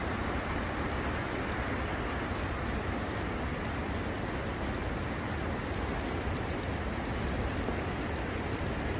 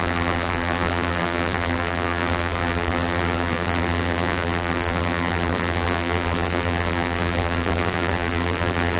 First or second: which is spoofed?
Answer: second